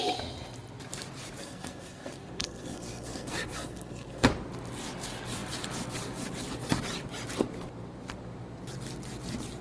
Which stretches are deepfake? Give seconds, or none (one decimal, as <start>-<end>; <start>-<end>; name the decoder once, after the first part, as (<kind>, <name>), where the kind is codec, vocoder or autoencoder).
1.4-4.3 (codec, SNAC)

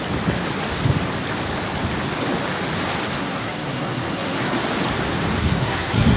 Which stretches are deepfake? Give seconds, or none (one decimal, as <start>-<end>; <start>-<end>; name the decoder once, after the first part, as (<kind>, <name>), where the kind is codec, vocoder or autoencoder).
3.2-4.6 (codec, SNAC); 5.4-6.2